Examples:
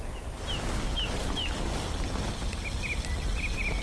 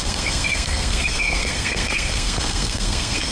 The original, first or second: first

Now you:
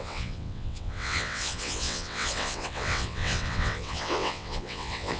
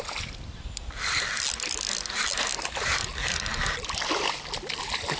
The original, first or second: second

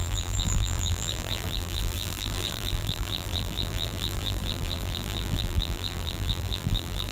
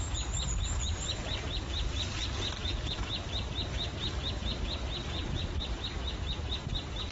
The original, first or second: second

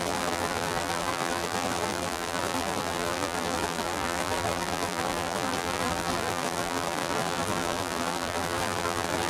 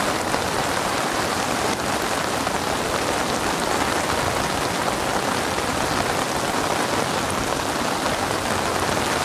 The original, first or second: second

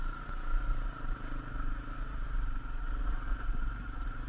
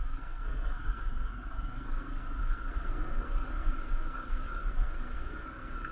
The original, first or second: first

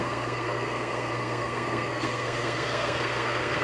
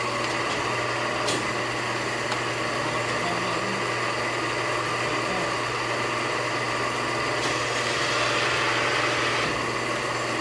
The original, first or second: second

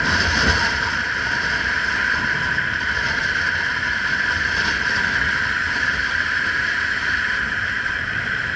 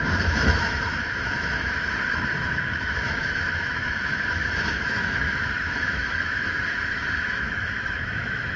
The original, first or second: first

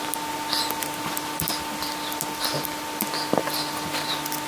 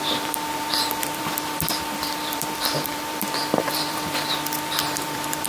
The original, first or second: first